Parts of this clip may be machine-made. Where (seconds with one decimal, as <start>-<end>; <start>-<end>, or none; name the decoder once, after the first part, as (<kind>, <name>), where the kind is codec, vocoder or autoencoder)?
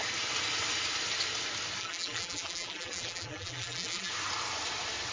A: 1.8-4.1 (vocoder, BigVGAN v2)